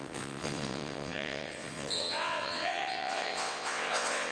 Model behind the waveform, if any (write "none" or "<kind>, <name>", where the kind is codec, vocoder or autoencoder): vocoder, WaveNeXt